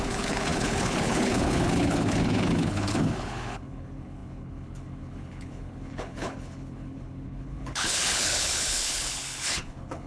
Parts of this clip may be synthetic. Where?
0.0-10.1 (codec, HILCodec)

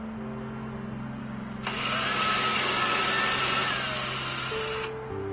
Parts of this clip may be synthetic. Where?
1.2-3.1 (codec, DAC)

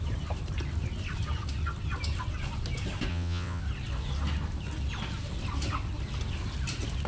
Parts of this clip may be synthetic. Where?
3.1-3.6 (vocoder, WaveNeXt)

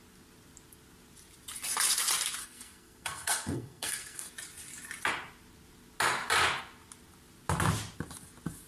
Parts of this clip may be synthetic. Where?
2.4-4.3 (codec, SNAC)